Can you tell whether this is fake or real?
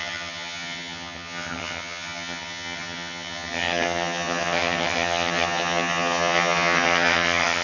fake